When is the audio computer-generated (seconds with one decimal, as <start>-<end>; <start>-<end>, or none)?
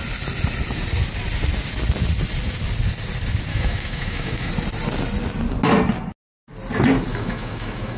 3.5-4.5; 7.1-8.0